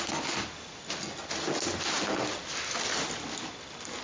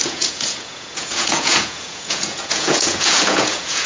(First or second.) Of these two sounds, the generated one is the second